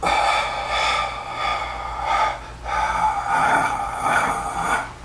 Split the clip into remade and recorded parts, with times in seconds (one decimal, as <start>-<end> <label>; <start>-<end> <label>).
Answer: 0.0-3.4 recorded; 3.4-4.3 remade; 4.3-5.0 recorded